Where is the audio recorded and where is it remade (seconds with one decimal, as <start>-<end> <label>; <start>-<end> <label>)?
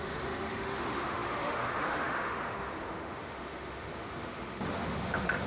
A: 0.0-5.5 remade